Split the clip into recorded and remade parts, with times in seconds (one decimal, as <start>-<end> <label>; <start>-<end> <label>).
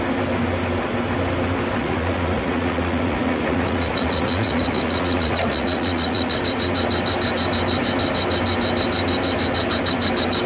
0.0-1.8 recorded; 1.8-6.4 remade; 6.4-10.5 recorded